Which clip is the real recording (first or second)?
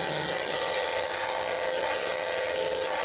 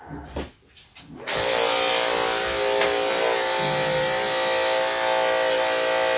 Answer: second